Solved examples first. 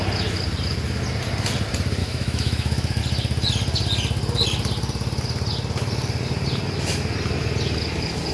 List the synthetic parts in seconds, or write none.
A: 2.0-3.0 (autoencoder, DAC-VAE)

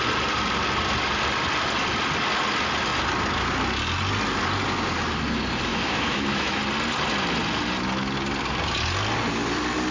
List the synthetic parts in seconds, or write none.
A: 5.7-6.6 (autoencoder, DAC-VAE)

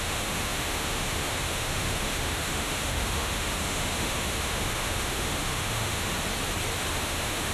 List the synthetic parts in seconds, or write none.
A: 0.0-6.1 (autoencoder, DAC-VAE); 6.9-7.5

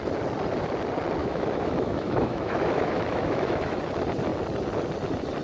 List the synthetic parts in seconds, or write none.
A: 1.2-3.8 (autoencoder, DAC-VAE)

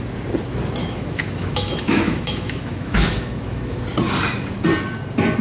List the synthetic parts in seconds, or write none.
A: 0.8-3.8 (autoencoder, DAC-VAE)